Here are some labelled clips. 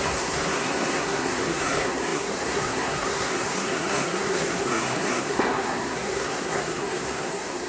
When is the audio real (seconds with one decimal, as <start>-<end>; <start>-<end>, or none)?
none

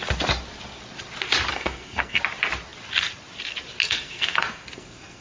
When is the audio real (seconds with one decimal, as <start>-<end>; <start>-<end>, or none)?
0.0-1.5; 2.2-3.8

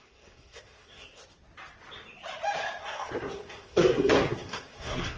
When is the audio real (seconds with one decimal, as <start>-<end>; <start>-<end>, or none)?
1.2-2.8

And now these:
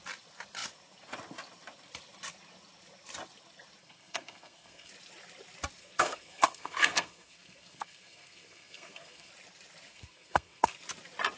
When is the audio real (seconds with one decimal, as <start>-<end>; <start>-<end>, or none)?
0.0-3.8; 4.9-5.8; 9.3-9.9; 10.7-11.4